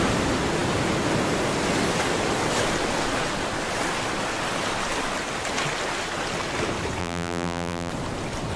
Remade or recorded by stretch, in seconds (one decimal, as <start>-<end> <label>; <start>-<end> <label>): 0.0-7.0 recorded; 7.0-7.9 remade; 7.9-8.6 recorded